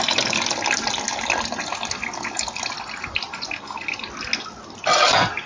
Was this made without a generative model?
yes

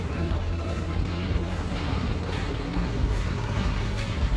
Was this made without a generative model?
no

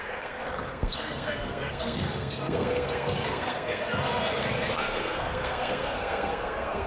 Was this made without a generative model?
no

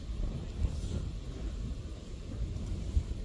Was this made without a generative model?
yes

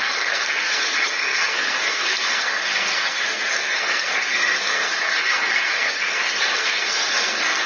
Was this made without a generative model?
no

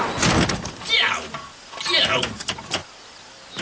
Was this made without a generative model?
yes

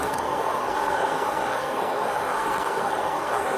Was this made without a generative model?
no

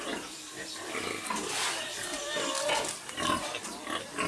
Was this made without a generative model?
yes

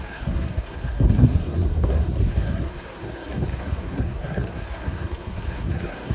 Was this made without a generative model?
no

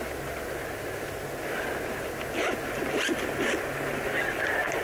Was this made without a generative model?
yes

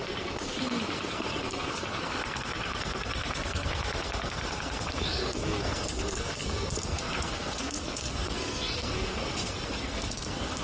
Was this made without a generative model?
no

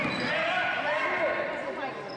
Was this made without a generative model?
yes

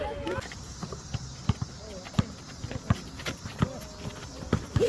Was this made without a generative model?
yes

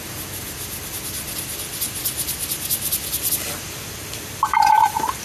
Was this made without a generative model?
yes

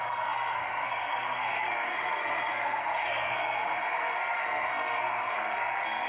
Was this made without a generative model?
no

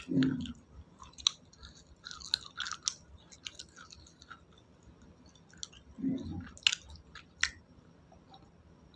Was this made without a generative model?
yes